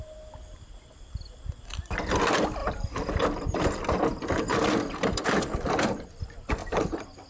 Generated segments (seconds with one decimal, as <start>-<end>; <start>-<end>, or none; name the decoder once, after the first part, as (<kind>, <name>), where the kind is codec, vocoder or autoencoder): 2.6-6.1 (vocoder, BigVGAN v2); 6.6-7.3